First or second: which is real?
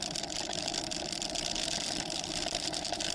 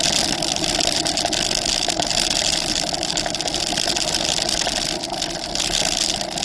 second